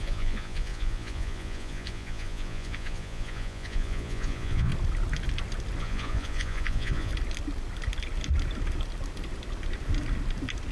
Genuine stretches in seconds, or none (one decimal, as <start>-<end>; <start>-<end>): 4.7-5.8; 7.1-10.7